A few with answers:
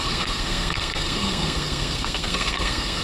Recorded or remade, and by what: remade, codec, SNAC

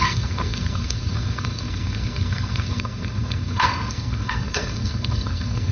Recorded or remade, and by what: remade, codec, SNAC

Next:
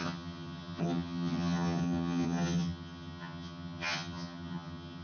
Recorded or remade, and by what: remade, vocoder, HiFi-GAN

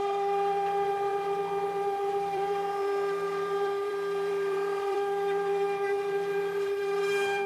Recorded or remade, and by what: remade, vocoder, BigVGAN v2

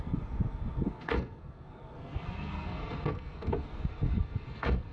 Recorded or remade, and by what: remade, codec, SNAC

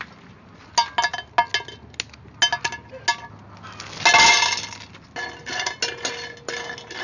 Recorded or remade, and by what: recorded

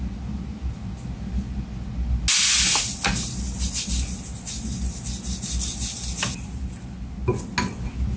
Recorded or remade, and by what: recorded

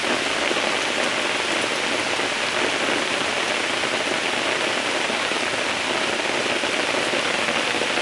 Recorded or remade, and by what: recorded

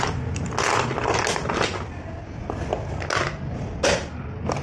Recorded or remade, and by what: recorded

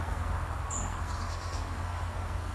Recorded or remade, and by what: remade, codec, SNAC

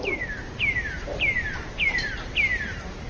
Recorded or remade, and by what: remade, vocoder, BigVGAN v2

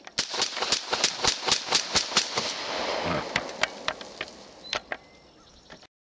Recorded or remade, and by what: recorded